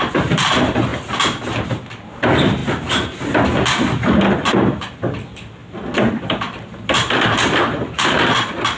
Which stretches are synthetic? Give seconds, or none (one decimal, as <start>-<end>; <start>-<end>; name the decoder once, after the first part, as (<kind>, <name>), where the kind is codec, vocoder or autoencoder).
0.0-0.9 (vocoder, BigVGAN v2); 1.7-2.6; 4.3-5.6; 6.1-8.8